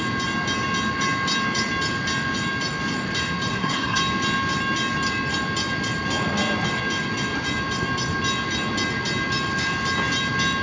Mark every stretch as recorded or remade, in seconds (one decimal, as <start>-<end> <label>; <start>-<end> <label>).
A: 0.0-3.5 recorded; 3.5-4.0 remade; 4.0-10.6 recorded